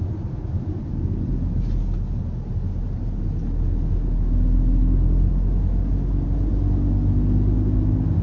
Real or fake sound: real